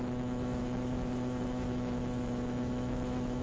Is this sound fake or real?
fake